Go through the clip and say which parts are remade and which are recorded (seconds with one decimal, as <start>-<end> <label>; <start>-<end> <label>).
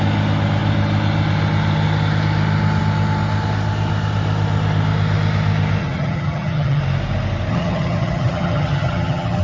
0.0-5.8 recorded; 5.8-6.8 remade; 6.8-7.5 recorded; 7.5-9.4 remade